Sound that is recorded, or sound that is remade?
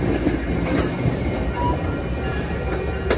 recorded